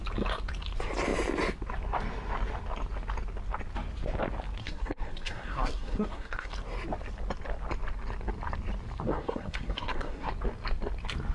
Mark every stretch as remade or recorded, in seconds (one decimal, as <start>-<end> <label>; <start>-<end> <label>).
0.0-4.6 recorded; 4.6-6.5 remade; 6.5-9.1 recorded; 9.1-10.3 remade; 10.3-11.3 recorded